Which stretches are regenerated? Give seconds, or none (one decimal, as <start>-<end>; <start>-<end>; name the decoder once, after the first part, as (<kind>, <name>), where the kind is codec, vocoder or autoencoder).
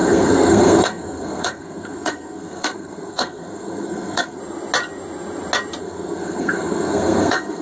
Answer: 0.0-4.4 (codec, SNAC); 5.8-7.6